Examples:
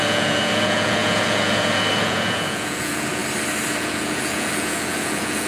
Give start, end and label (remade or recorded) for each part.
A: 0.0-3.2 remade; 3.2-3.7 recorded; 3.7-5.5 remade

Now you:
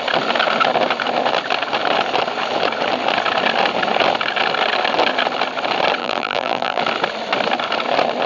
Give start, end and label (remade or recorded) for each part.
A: 0.0-6.0 recorded; 6.0-6.8 remade; 6.8-8.3 recorded

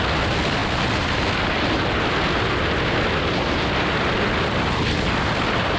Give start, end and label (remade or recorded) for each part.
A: 0.0-5.8 recorded

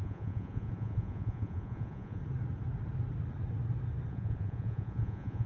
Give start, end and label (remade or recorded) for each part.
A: 0.0-2.2 remade; 2.2-4.1 recorded; 4.1-5.5 remade

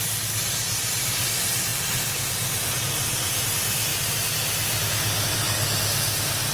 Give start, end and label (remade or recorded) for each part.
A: 0.0-1.7 recorded; 1.7-3.5 remade; 3.5-3.9 recorded; 3.9-5.3 remade; 5.3-6.5 recorded

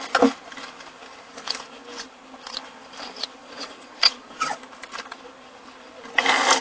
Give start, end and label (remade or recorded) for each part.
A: 0.0-3.4 recorded; 3.4-4.6 remade; 4.6-6.6 recorded

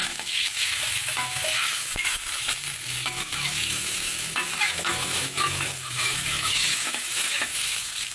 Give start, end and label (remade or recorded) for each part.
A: 0.0-8.1 remade

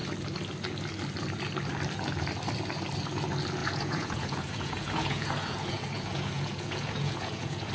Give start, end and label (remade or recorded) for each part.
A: 0.0-3.6 recorded; 3.6-7.7 remade